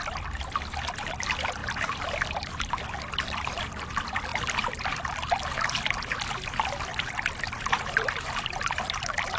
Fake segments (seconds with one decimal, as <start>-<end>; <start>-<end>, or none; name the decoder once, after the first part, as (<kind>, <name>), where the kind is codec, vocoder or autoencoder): 1.6-2.8 (vocoder, BigVGAN v2); 4.3-5.1; 6.9-7.4